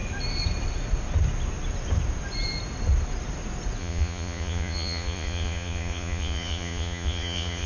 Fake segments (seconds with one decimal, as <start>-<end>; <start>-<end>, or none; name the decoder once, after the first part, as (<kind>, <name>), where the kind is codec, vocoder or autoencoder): 3.8-7.7 (vocoder, Vocos)